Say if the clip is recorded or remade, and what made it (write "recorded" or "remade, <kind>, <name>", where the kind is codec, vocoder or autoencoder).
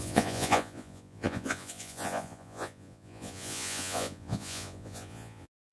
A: remade, vocoder, Vocos